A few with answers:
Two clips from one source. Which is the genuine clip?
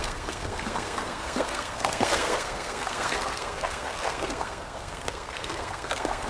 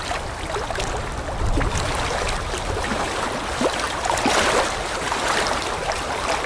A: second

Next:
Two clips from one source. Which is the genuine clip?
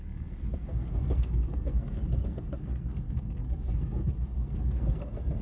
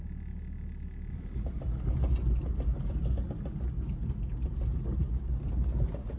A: second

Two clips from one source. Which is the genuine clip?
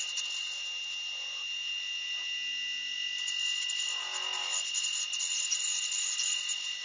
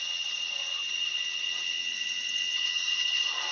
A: first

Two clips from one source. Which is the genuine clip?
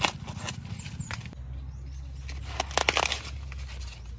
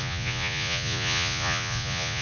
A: first